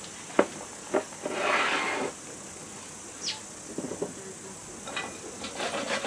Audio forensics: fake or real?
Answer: real